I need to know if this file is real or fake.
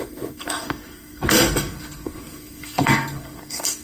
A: fake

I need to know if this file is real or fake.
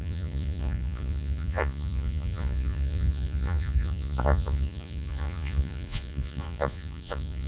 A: fake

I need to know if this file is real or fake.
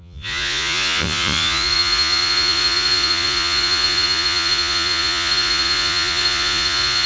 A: fake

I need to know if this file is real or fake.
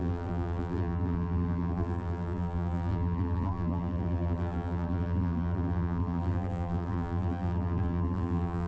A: fake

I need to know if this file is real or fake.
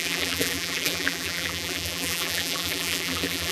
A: fake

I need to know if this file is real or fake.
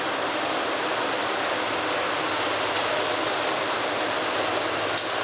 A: real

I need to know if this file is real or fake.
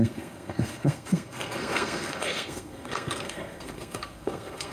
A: fake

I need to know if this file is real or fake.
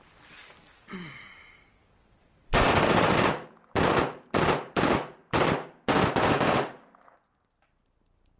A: real